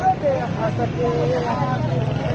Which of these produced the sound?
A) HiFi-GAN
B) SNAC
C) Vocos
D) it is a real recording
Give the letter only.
D